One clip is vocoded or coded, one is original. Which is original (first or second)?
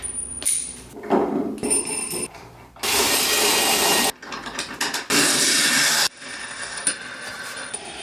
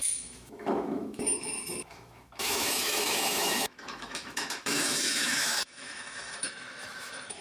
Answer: first